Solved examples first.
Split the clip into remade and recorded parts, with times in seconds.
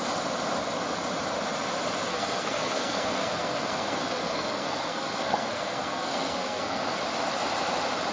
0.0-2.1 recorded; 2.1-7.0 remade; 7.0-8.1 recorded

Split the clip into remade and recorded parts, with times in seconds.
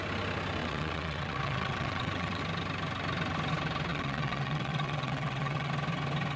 0.0-0.6 recorded; 0.6-2.4 remade; 2.4-3.9 recorded; 3.9-5.7 remade; 5.7-6.4 recorded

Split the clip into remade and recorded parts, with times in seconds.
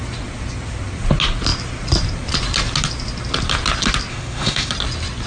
0.0-4.1 recorded; 4.1-4.7 remade; 4.7-5.3 recorded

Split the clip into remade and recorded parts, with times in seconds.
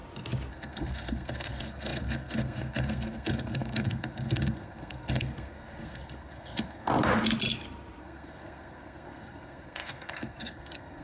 0.0-0.5 recorded; 0.5-6.9 remade; 6.9-8.0 recorded; 8.0-11.0 remade